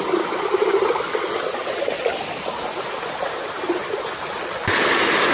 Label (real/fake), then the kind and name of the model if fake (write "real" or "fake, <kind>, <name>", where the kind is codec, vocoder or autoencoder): real